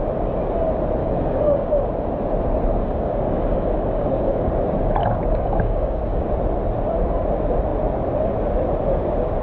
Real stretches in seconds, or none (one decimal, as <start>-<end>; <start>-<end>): 0.0-1.0; 1.9-2.8; 4.5-5.0; 6.2-9.4